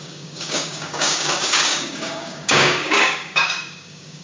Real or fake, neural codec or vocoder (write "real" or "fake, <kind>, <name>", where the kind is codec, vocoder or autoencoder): fake, codec, DAC